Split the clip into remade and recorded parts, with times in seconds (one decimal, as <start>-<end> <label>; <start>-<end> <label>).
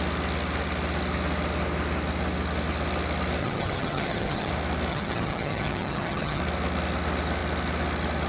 0.0-3.4 recorded; 3.4-4.5 remade; 4.5-4.9 recorded; 4.9-6.4 remade; 6.4-8.3 recorded